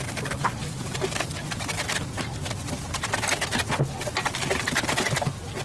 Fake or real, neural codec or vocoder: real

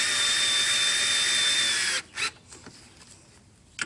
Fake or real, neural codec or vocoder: real